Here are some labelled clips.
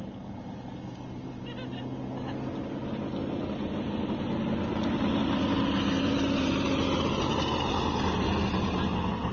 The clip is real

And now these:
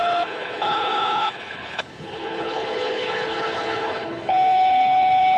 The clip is fake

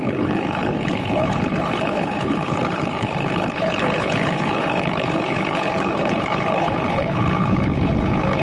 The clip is fake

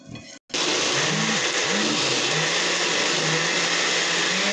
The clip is real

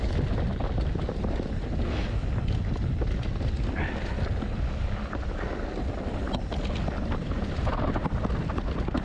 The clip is real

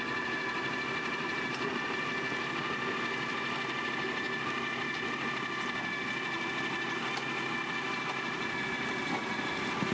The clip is real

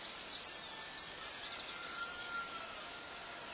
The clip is real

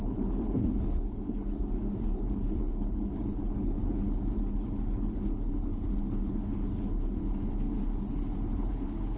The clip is fake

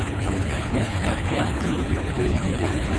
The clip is fake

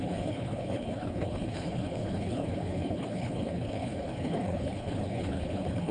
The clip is fake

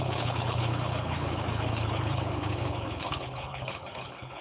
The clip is fake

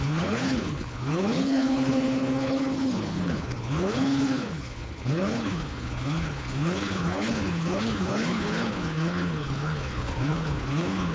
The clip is fake